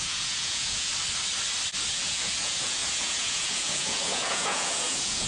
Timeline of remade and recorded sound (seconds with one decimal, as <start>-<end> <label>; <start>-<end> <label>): 0.0-0.9 remade; 0.9-1.9 recorded; 1.9-5.3 remade